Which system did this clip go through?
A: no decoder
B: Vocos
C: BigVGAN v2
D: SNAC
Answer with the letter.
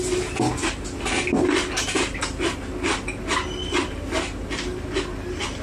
A